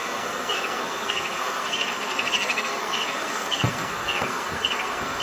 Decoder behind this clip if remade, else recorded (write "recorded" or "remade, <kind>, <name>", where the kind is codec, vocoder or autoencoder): remade, codec, SNAC